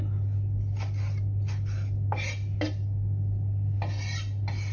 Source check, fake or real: real